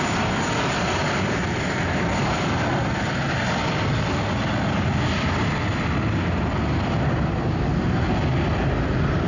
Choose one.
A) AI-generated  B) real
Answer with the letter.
B